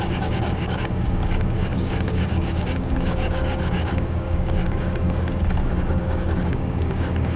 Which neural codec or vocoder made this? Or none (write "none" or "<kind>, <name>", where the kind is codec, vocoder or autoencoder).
codec, DAC